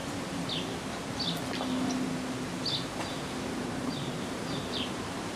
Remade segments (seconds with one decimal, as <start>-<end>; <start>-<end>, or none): 3.1-5.4